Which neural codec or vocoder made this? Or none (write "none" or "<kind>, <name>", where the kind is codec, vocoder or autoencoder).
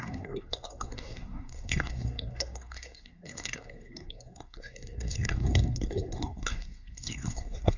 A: codec, SNAC